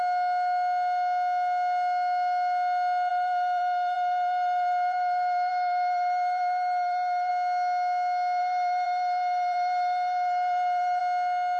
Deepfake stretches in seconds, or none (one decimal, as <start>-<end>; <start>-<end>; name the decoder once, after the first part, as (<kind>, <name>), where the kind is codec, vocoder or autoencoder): 3.1-7.3 (vocoder, BigVGAN v2); 8.4-11.0